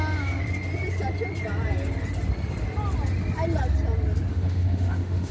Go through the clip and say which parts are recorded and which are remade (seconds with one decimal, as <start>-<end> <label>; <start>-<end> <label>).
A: 0.0-4.3 recorded; 4.3-5.3 remade